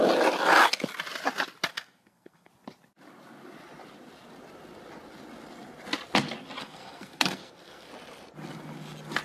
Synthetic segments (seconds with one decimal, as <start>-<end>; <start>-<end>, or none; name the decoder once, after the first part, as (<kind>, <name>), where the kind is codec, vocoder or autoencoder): 1.7-2.5 (codec, SNAC); 6.6-7.9